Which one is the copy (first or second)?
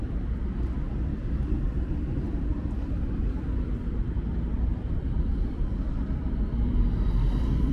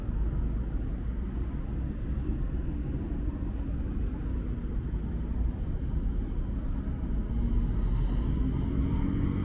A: first